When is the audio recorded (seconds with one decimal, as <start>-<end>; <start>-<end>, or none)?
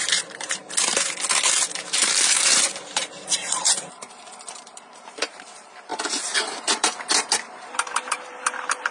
0.6-1.8; 5.9-6.7